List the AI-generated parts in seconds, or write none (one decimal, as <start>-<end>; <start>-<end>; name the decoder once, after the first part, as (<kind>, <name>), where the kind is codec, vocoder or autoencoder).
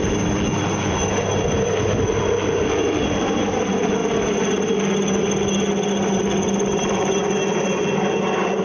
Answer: none